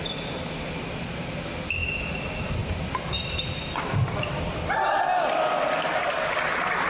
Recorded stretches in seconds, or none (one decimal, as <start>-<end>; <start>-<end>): 0.0-6.9